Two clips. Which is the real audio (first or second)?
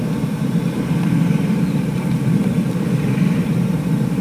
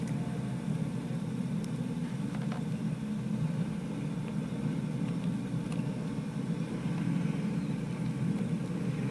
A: second